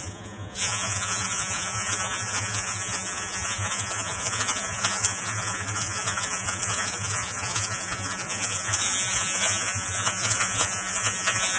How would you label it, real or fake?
fake